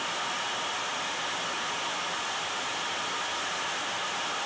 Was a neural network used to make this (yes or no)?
no